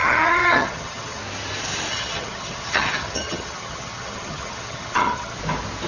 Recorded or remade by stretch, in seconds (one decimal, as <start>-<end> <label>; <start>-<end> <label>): 0.0-1.2 remade; 1.2-1.9 recorded; 1.9-5.4 remade; 5.4-5.9 recorded